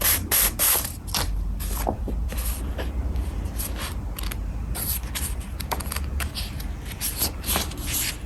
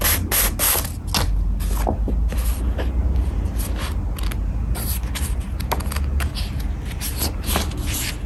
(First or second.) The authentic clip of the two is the second